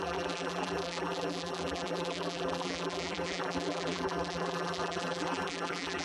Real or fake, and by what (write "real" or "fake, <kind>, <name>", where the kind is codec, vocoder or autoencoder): fake, vocoder, BigVGAN v2